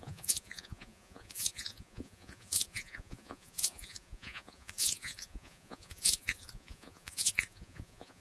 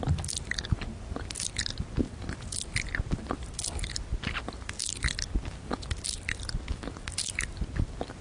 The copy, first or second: first